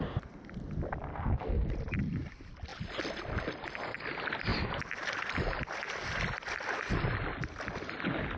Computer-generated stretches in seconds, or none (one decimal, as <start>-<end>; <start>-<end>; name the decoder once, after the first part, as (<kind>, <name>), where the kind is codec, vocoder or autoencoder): 1.1-1.7 (codec, SNAC)